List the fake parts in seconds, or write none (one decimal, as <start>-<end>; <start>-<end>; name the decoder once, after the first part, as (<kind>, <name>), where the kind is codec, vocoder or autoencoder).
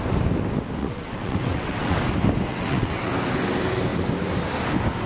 0.8-2.0 (vocoder, WaveNeXt); 2.5-3.1